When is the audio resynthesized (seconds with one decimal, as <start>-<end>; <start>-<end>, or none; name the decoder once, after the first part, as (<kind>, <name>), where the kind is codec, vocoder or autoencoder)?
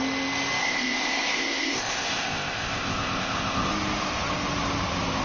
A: 0.6-3.7 (codec, ZipCodec)